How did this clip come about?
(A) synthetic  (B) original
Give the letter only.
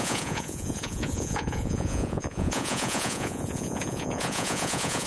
A